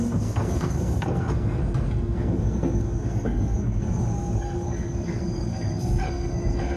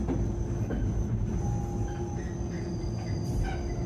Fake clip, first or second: first